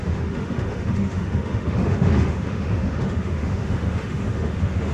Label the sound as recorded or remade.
remade